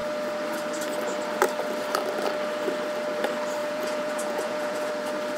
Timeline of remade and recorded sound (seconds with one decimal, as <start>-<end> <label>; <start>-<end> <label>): 0.0-3.6 recorded; 3.6-4.9 remade; 4.9-5.4 recorded